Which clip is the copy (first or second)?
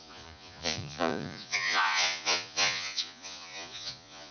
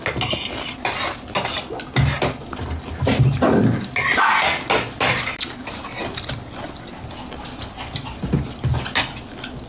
first